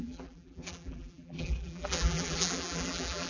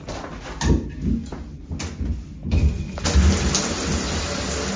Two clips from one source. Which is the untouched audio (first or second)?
second